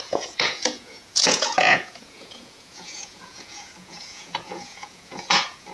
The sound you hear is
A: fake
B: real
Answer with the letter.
A